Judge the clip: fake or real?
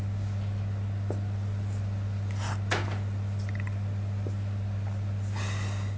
real